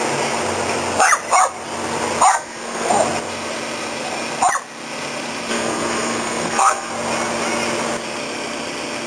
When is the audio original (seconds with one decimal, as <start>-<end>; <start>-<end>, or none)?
0.0-2.3; 2.9-5.5; 6.9-9.1